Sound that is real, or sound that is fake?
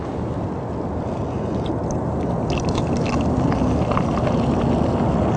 real